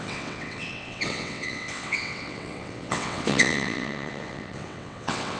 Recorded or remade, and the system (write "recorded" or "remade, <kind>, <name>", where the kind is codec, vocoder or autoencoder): remade, vocoder, WaveNeXt